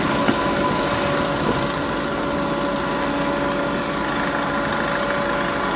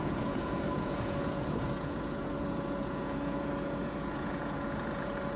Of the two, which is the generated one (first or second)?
second